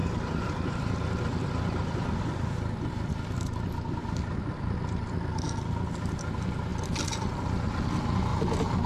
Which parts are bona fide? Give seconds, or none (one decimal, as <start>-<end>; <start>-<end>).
3.9-8.9